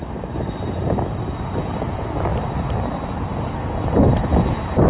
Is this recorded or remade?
recorded